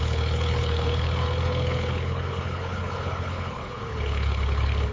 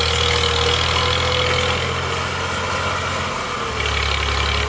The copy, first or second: first